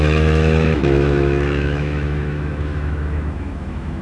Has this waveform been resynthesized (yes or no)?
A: yes